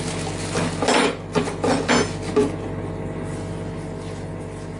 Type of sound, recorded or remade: recorded